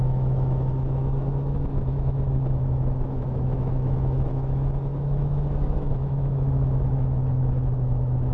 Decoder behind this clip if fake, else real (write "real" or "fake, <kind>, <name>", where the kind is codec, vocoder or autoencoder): fake, autoencoder, DAC-VAE